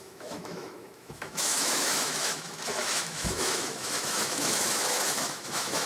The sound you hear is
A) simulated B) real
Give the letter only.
A